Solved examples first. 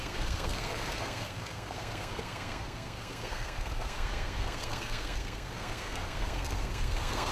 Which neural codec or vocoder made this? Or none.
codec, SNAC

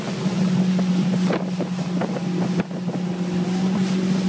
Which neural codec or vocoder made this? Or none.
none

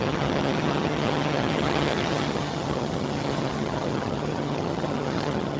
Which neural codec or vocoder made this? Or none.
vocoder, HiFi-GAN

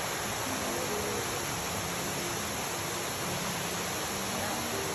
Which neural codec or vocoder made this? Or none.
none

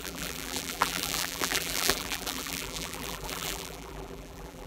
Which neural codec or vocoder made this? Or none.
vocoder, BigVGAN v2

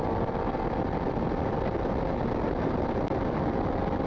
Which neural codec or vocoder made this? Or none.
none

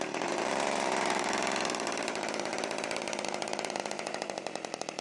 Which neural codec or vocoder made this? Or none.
vocoder, BigVGAN v2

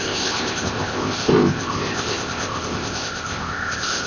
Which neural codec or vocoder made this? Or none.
codec, ZipCodec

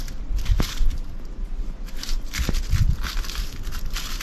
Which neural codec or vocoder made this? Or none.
none